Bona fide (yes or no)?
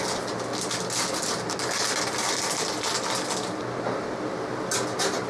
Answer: yes